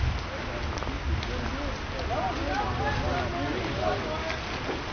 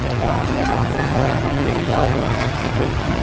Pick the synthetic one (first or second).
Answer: second